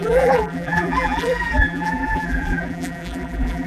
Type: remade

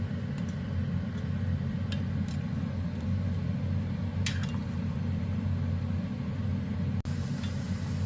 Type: recorded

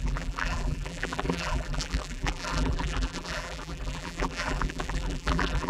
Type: remade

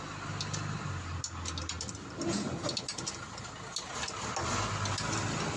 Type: recorded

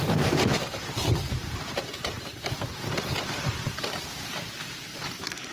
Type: remade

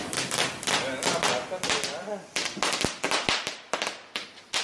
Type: recorded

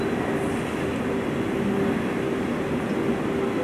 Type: recorded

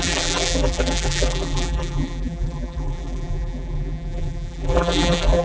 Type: remade